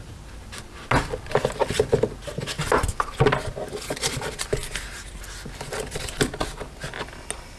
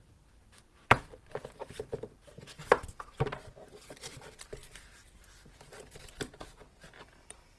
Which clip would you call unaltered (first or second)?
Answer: first